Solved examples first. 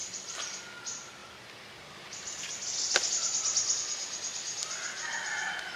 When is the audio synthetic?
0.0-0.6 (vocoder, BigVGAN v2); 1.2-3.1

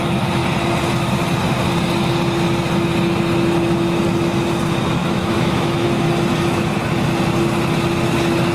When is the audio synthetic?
5.0-6.0 (autoencoder, DAC-VAE)